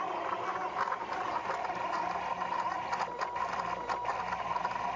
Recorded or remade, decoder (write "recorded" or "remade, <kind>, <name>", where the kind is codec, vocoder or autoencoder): recorded